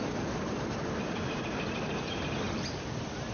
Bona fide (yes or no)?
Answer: yes